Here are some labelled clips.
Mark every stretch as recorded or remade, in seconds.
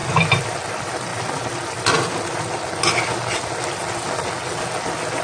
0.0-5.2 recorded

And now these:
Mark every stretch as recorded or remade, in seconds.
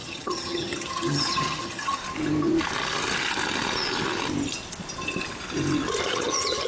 0.0-2.0 remade; 2.0-6.0 recorded; 6.0-6.7 remade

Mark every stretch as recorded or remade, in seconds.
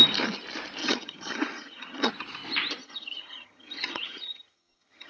0.0-0.8 recorded; 0.8-2.1 remade; 2.1-2.8 recorded; 2.8-5.1 remade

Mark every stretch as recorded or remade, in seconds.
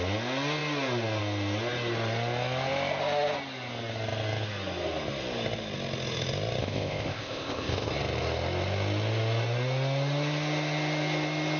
0.0-6.6 recorded; 6.6-7.9 remade; 7.9-11.6 recorded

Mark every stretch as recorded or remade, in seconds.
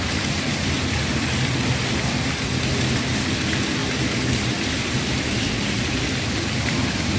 0.0-7.2 recorded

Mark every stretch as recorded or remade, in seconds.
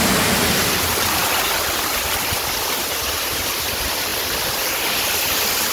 0.0-5.7 recorded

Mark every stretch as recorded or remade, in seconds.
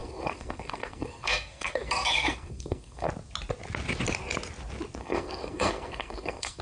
0.0-3.1 remade; 3.1-5.0 recorded; 5.0-6.6 remade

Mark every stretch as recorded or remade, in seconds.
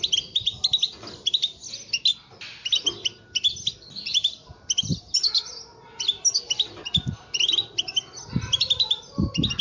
0.0-9.6 recorded